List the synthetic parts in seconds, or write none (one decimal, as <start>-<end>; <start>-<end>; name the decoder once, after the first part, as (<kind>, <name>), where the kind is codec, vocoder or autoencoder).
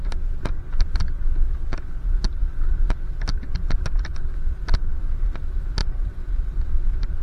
5.8-6.8 (vocoder, BigVGAN v2)